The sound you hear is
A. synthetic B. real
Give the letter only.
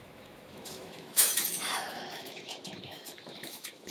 A